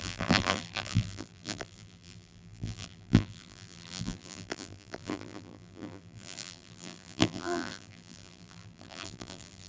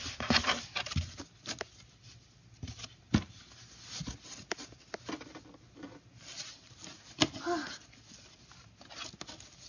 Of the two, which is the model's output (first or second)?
first